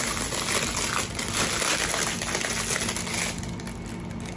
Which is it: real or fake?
real